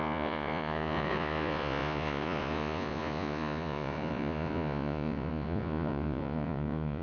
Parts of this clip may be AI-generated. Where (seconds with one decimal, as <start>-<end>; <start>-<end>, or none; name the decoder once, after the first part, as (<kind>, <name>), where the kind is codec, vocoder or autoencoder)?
0.0-7.0 (vocoder, Vocos)